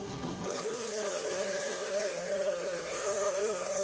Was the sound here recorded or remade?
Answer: remade